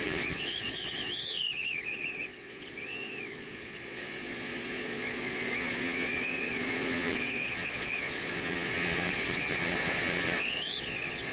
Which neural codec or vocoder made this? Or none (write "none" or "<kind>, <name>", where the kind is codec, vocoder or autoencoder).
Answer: vocoder, Vocos